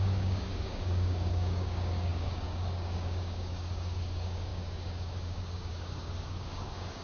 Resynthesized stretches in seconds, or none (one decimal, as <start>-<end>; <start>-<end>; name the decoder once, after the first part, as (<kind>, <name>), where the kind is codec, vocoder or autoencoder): 0.0-7.0 (codec, DAC)